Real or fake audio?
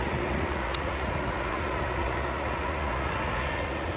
fake